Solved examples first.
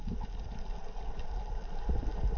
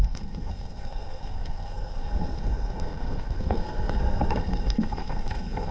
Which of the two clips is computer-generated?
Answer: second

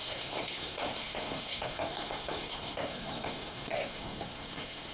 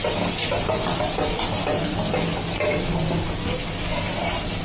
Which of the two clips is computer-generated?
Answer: first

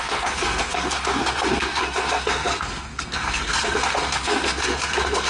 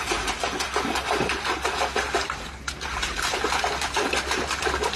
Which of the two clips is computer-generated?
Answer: first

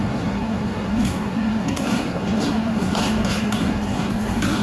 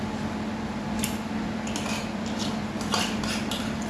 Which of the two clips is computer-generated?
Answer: first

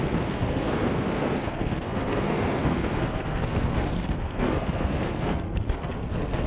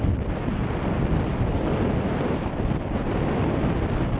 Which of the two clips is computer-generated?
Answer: first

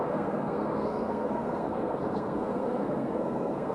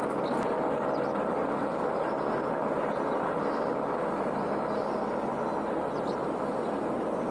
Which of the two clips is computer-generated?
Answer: first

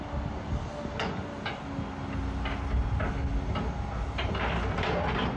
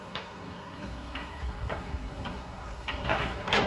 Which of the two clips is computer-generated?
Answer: second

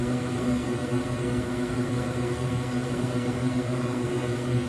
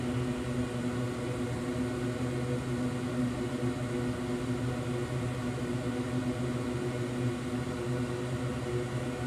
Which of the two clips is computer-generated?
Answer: first